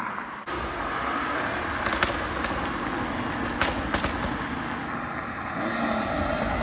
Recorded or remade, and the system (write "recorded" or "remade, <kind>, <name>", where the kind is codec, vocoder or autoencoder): recorded